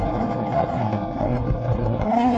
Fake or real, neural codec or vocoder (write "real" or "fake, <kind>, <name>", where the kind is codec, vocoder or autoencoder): fake, codec, SNAC